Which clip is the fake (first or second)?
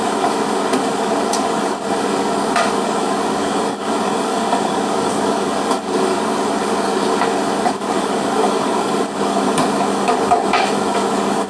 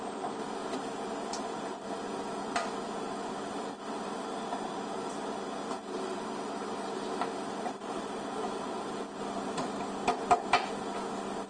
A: first